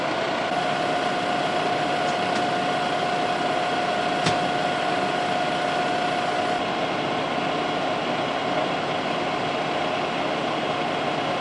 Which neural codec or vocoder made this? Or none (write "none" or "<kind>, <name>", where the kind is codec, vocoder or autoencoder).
none